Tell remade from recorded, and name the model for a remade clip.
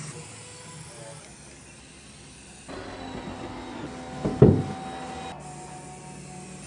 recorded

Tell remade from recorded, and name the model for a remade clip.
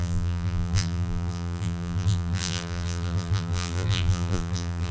remade, vocoder, BigVGAN v2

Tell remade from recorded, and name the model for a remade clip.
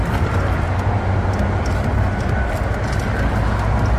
recorded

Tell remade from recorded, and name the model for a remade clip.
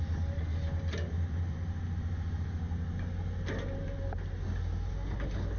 recorded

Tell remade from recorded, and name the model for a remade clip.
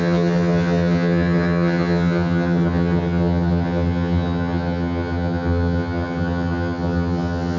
remade, vocoder, HiFi-GAN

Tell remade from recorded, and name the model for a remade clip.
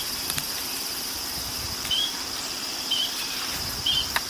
remade, vocoder, BigVGAN v2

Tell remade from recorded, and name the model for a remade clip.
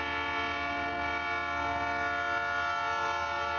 recorded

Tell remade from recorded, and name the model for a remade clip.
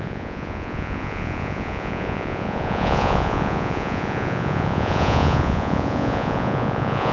remade, vocoder, Vocos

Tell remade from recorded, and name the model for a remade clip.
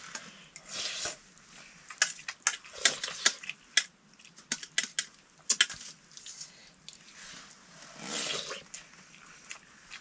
recorded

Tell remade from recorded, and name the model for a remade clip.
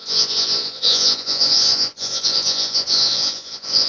remade, vocoder, Vocos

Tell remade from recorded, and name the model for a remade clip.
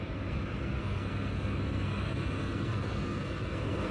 remade, codec, SNAC